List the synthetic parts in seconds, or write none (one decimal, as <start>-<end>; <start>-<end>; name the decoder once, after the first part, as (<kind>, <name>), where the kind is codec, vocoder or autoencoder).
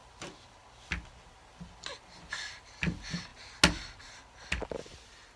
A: none